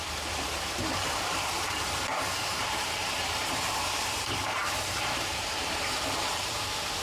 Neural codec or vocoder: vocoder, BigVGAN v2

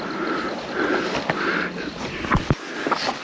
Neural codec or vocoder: none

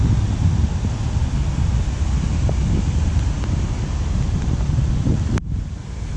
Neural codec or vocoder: none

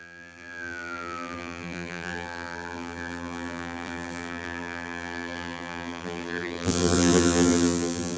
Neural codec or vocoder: vocoder, BigVGAN v2